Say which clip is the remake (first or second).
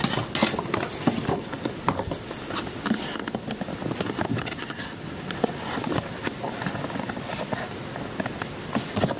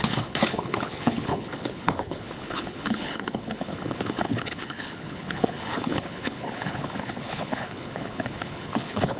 second